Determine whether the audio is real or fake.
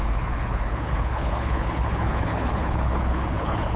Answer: fake